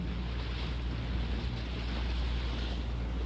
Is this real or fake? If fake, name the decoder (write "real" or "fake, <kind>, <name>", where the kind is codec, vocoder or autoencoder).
real